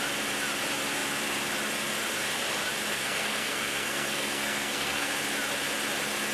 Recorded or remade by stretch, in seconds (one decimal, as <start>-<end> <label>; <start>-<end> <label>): 0.0-2.9 recorded; 2.9-5.1 remade; 5.1-6.3 recorded